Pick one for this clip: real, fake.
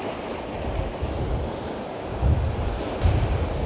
real